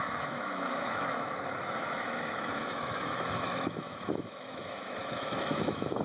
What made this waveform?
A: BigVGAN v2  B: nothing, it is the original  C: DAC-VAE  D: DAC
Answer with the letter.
C